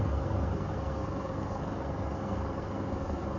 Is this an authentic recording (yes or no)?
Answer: no